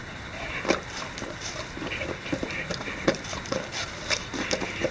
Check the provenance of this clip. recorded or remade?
remade